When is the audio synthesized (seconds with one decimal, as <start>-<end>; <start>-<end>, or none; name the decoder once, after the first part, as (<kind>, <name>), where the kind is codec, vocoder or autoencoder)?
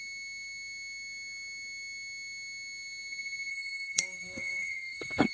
3.5-5.3 (codec, SNAC)